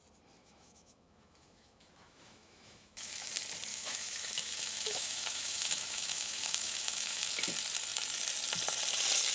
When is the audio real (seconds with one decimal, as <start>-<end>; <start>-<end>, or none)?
0.0-0.4; 3.3-3.7; 7.3-9.3